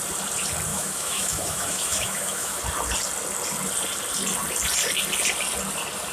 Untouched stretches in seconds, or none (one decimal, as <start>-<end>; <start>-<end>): 0.0-0.7; 2.6-6.1